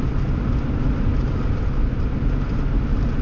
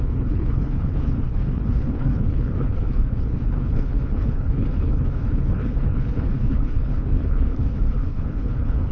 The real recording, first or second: first